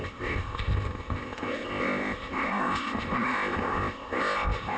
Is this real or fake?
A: fake